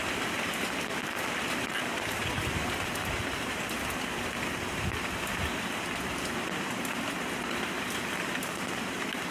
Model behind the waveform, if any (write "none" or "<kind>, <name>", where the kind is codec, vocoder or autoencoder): vocoder, BigVGAN v2